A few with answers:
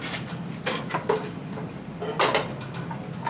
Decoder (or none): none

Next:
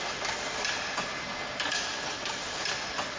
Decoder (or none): none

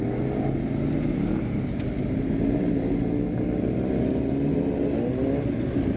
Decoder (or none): none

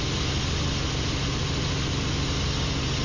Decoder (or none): none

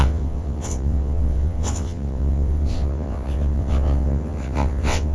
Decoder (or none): vocoder, WaveNeXt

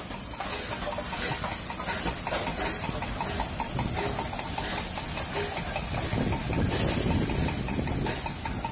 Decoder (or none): none